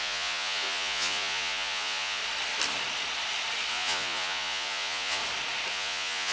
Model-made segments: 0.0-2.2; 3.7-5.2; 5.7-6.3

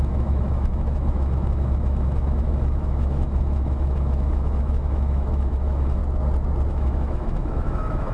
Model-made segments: 0.0-6.0; 6.7-8.1

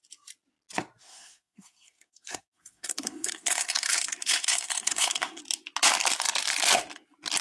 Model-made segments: 1.0-5.4

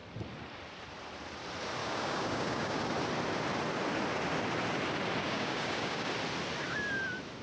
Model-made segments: 1.8-2.8; 5.2-6.1

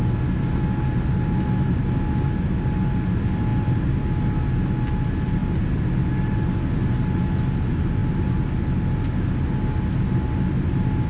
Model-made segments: none

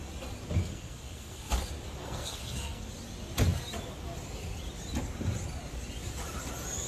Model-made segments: 0.6-1.5; 2.0-2.8

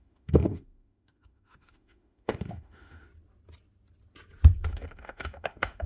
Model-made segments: 0.0-3.1; 4.7-5.9